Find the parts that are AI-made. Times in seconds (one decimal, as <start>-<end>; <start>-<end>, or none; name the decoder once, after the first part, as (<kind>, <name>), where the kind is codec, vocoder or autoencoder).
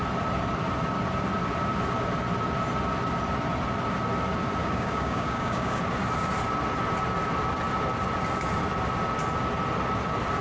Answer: 4.6-5.8 (codec, DAC)